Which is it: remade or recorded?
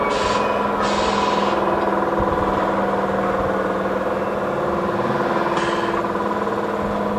recorded